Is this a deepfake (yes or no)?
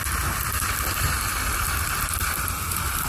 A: no